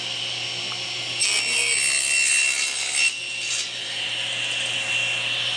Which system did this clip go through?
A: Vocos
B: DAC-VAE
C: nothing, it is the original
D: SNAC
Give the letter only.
C